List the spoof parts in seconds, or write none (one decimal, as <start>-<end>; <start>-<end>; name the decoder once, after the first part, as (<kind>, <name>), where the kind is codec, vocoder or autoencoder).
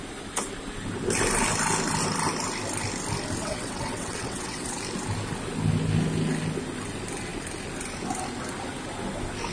3.4-4.8 (vocoder, WaveNeXt)